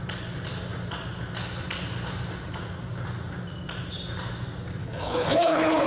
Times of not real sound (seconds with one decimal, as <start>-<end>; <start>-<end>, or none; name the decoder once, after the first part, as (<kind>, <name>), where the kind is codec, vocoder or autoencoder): 4.8-5.9 (codec, HILCodec)